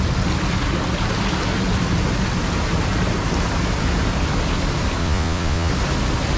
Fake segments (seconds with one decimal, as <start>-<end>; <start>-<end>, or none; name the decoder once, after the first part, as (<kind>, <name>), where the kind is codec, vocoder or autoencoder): 5.0-5.7 (vocoder, Vocos)